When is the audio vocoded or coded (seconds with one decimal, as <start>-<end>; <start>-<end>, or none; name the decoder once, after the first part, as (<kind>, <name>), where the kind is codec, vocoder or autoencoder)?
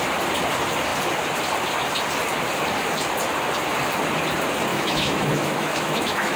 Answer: 4.7-6.4 (autoencoder, DAC-VAE)